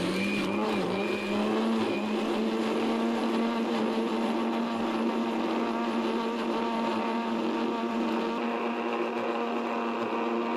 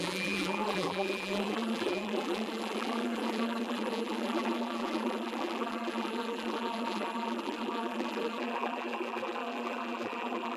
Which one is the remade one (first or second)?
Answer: second